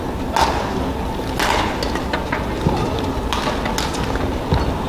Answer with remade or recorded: recorded